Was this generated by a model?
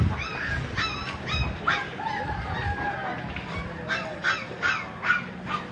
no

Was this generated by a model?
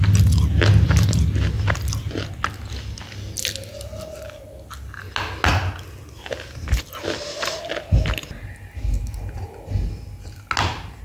no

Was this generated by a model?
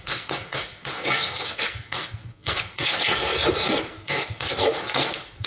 yes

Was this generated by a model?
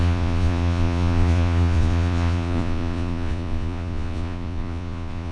yes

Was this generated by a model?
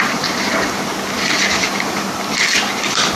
yes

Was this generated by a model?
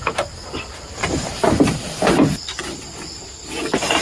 no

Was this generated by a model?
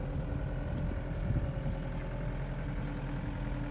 no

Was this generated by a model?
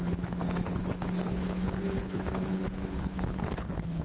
yes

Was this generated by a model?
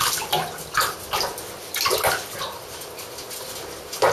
no